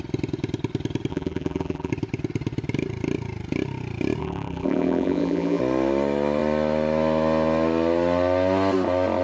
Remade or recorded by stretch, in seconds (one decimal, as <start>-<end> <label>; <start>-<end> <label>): 0.0-1.1 recorded; 1.1-1.9 remade; 1.9-4.2 recorded; 4.2-5.6 remade; 5.6-9.2 recorded